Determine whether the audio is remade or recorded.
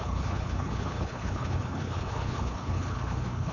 remade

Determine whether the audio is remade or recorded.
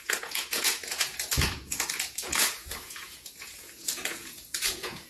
remade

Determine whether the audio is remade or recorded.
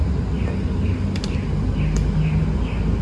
recorded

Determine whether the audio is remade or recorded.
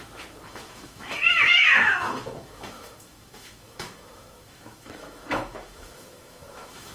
remade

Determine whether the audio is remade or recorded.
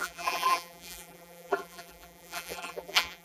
remade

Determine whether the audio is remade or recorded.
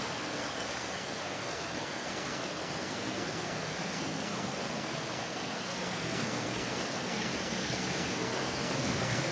remade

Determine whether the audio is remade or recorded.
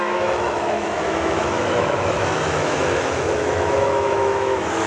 remade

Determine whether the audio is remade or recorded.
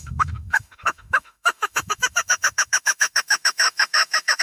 remade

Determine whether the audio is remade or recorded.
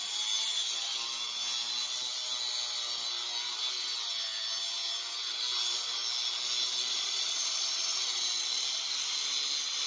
recorded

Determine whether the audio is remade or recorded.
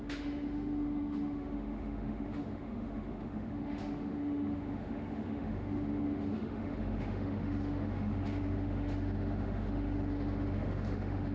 remade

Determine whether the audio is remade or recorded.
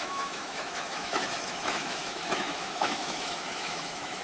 remade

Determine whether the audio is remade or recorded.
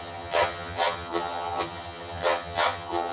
remade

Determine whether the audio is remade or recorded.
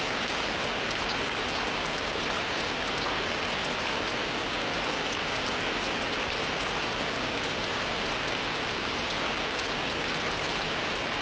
recorded